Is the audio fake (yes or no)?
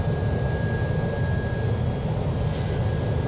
no